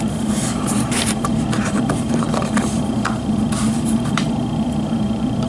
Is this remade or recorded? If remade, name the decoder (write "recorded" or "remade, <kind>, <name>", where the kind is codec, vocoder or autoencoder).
remade, vocoder, BigVGAN v2